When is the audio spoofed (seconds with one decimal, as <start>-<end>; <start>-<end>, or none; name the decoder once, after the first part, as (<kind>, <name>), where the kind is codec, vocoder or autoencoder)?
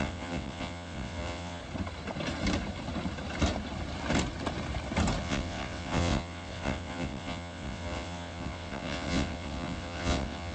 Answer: 0.0-1.6 (vocoder, WaveNeXt); 5.2-10.5